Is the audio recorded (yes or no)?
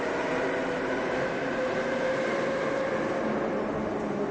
yes